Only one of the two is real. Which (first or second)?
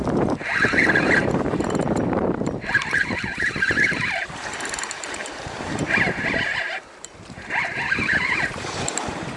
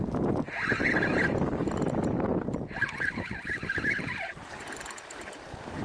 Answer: second